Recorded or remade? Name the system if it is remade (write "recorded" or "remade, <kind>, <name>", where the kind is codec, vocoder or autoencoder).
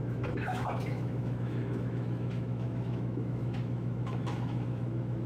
remade, autoencoder, DAC-VAE